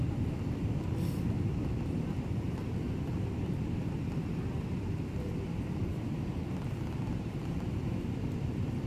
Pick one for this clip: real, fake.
fake